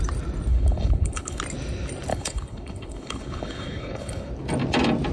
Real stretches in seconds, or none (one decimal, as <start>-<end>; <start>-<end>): 0.0-0.5; 1.4-2.1; 4.3-5.1